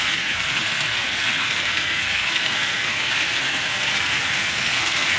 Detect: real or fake fake